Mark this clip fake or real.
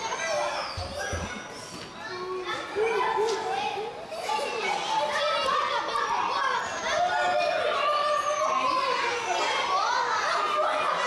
real